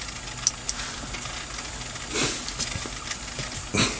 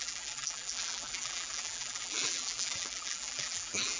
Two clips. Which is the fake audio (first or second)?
second